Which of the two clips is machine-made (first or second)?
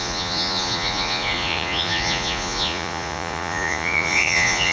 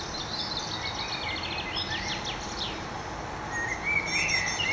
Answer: first